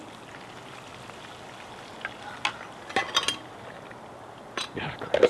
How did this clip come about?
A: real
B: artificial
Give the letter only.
A